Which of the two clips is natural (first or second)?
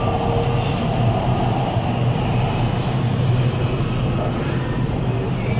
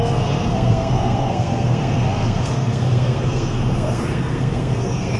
first